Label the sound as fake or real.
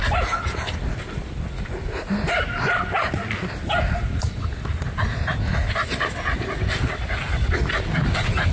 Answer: real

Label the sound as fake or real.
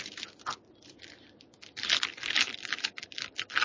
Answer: real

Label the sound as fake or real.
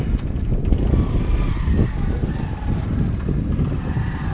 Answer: real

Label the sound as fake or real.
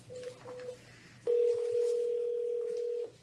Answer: real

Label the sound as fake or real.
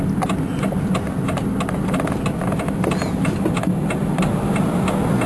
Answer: real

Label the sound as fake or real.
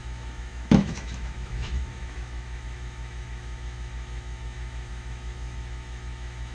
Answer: fake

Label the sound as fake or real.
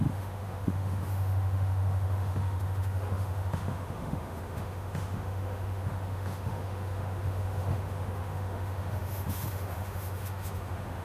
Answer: fake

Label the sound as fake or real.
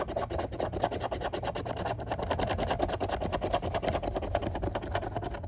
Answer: real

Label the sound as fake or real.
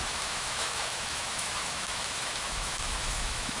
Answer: fake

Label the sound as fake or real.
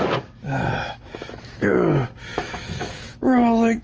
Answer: fake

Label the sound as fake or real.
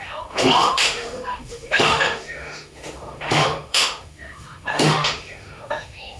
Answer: fake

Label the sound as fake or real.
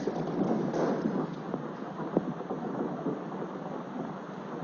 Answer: real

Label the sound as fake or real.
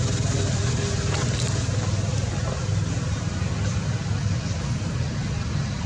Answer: real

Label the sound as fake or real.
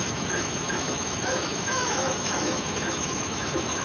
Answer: fake